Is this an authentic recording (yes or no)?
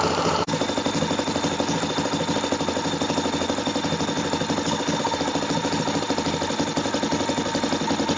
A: yes